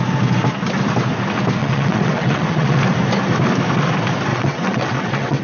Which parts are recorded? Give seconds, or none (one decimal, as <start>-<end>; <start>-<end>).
0.0-1.6; 2.8-4.3